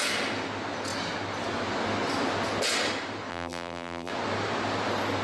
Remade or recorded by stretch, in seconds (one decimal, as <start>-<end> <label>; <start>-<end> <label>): 0.0-3.3 recorded; 3.3-4.1 remade; 4.1-5.2 recorded